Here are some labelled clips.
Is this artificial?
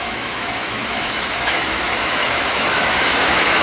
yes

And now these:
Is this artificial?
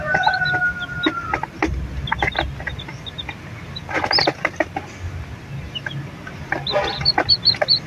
no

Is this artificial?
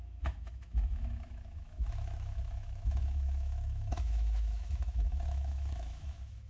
yes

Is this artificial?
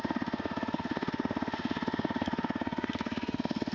yes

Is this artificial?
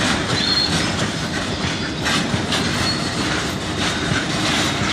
no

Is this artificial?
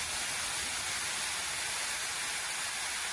no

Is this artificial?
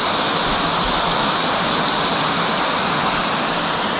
no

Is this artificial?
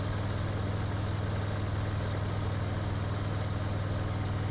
no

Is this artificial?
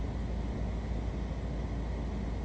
no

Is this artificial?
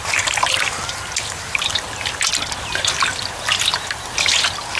no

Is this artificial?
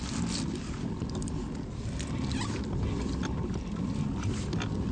no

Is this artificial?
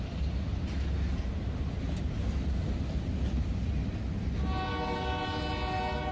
no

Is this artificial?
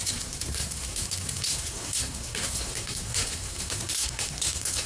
yes